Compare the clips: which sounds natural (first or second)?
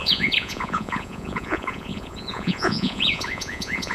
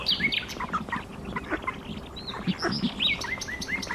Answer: second